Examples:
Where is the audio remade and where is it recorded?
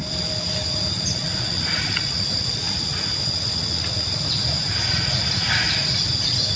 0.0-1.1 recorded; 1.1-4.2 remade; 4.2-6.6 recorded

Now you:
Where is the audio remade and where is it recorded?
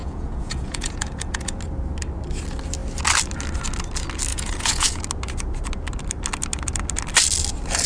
0.0-1.6 remade; 1.6-4.3 recorded; 4.3-5.0 remade; 5.0-7.9 recorded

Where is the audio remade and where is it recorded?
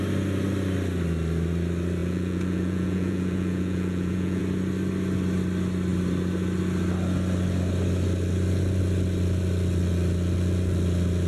0.0-2.0 recorded; 2.0-4.4 remade; 4.4-11.3 recorded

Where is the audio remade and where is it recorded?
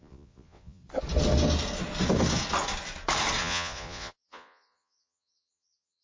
0.0-0.8 remade; 0.8-3.4 recorded; 3.4-6.0 remade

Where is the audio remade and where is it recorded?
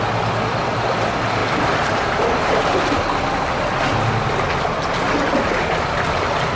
0.0-6.6 recorded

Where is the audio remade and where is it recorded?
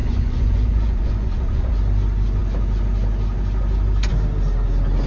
0.0-1.7 remade; 1.7-5.1 recorded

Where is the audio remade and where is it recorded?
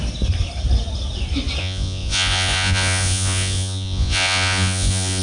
0.0-1.6 recorded; 1.6-5.2 remade